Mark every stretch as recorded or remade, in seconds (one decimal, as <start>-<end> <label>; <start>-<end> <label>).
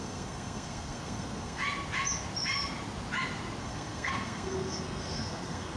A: 0.0-1.6 remade; 1.6-3.6 recorded; 3.6-5.8 remade